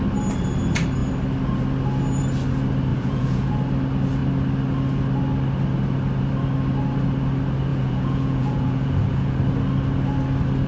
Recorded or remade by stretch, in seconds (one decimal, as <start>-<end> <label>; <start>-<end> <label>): 0.0-2.9 recorded; 2.9-3.6 remade; 3.6-7.7 recorded; 7.7-9.4 remade; 9.4-10.7 recorded

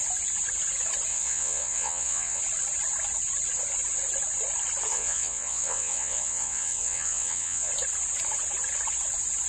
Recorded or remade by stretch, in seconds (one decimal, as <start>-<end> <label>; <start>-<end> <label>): 0.0-1.1 recorded; 1.1-2.4 remade; 2.4-4.9 recorded; 4.9-7.7 remade; 7.7-9.5 recorded

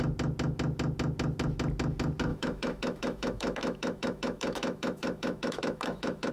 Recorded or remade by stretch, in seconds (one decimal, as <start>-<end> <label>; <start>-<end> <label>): 0.0-2.3 recorded; 2.3-6.3 remade

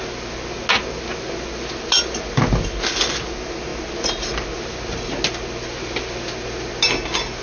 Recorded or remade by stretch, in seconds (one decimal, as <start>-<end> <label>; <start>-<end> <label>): 0.0-7.4 recorded

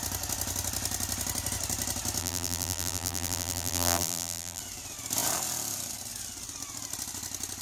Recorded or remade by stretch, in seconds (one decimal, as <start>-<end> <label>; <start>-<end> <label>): 0.0-2.2 recorded; 2.2-4.6 remade; 4.6-7.6 recorded

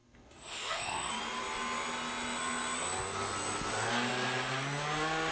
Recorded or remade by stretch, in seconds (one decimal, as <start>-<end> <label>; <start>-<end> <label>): 0.0-1.1 remade; 1.1-5.3 recorded

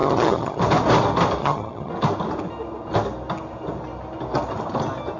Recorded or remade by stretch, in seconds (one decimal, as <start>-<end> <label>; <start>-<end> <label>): 0.0-0.6 remade; 0.6-1.4 recorded; 1.4-1.9 remade; 1.9-5.2 recorded

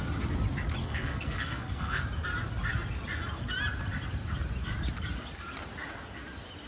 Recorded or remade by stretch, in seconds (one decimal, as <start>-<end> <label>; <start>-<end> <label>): 0.0-0.8 recorded; 0.8-2.0 remade; 2.0-6.7 recorded